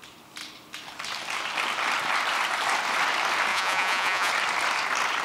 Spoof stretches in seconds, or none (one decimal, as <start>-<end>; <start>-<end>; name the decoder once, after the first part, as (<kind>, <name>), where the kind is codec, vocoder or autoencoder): 3.5-4.3 (vocoder, Vocos)